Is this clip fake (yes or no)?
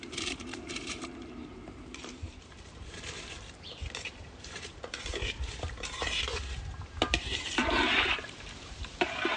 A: yes